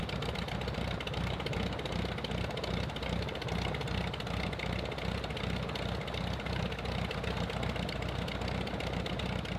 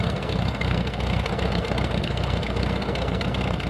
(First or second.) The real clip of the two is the first